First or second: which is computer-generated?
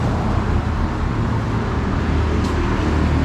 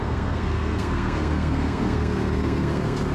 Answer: second